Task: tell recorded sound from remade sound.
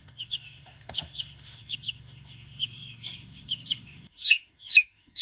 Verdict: remade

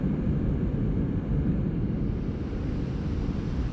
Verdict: recorded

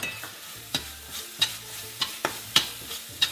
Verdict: remade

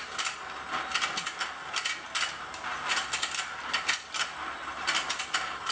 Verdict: recorded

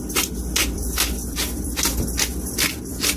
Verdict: remade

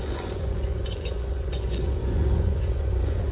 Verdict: remade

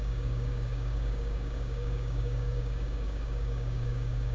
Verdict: remade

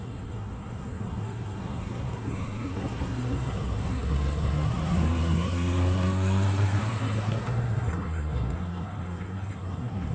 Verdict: remade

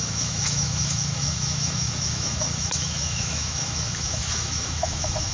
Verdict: remade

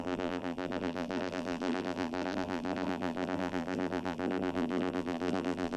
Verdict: remade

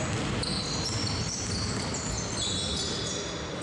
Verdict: recorded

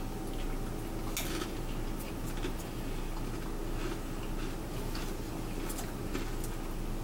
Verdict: recorded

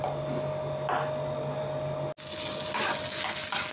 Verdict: recorded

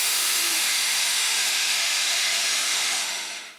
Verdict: remade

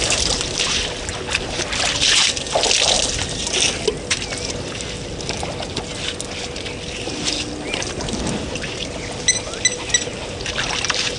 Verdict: recorded